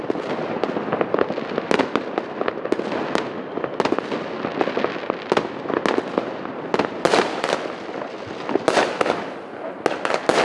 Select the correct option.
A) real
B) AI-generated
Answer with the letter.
A